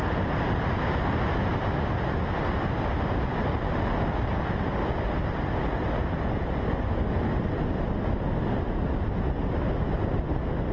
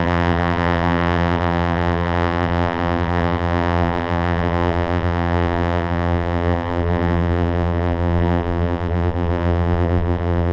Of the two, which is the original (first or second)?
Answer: first